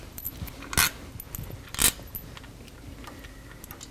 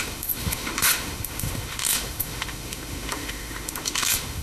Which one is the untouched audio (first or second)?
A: first